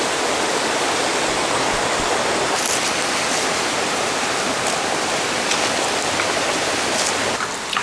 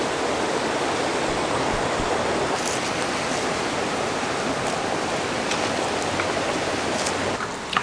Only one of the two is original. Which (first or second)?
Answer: second